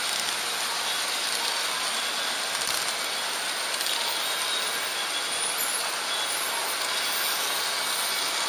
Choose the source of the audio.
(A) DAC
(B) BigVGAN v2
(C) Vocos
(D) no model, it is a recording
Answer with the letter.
D